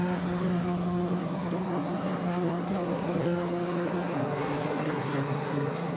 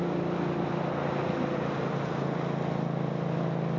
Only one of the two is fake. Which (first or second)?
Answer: first